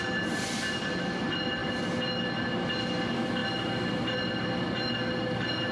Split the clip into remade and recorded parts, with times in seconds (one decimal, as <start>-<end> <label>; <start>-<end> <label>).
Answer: 0.0-5.7 recorded